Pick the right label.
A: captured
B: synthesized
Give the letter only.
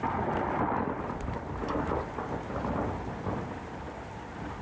A